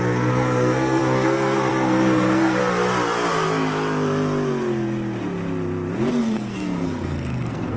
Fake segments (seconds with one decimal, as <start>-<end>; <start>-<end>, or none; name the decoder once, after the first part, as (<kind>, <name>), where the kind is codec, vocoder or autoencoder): 0.0-2.6 (codec, SNAC); 6.2-7.8